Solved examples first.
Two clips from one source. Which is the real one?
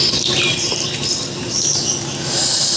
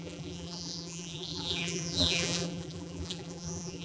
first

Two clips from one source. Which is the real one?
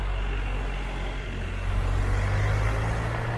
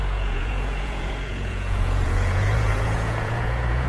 first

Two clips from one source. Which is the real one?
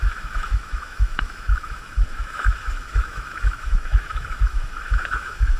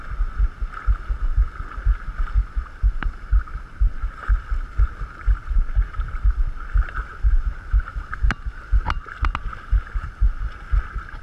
second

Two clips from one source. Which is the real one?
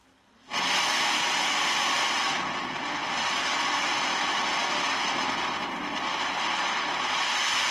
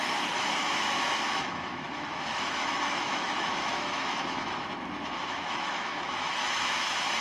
first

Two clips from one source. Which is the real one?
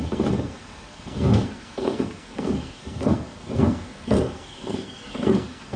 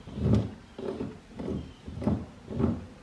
second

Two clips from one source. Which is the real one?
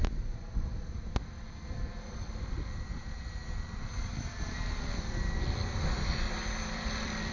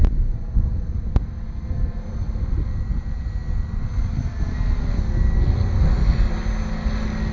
second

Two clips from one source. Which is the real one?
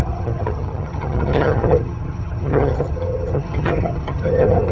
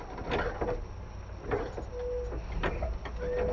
second